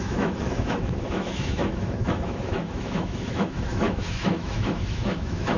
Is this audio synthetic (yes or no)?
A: yes